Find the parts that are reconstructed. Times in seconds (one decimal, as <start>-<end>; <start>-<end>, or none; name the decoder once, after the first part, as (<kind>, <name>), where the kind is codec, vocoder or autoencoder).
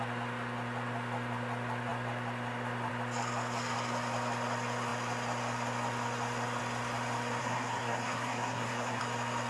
7.4-9.0 (codec, SNAC)